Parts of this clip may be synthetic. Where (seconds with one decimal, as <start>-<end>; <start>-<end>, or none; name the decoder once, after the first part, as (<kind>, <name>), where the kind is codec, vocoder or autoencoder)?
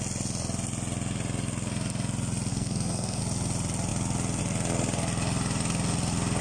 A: 2.5-3.2 (codec, SNAC)